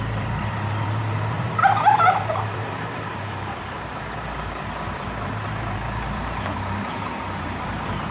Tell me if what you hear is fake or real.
fake